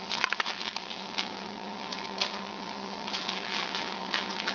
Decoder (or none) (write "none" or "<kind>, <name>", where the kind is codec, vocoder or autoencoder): vocoder, WaveNeXt